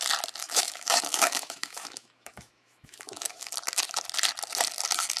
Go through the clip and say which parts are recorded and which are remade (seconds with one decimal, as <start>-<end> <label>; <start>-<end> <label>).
0.0-0.4 recorded; 0.4-3.5 remade; 3.5-5.2 recorded